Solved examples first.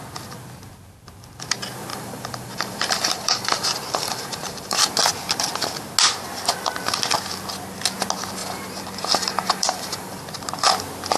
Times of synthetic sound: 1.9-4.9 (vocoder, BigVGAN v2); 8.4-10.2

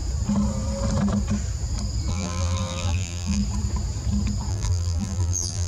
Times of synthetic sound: 2.1-3.4 (vocoder, BigVGAN v2); 4.5-5.7